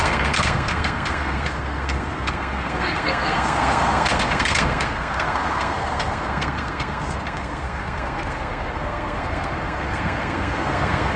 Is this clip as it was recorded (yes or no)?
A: no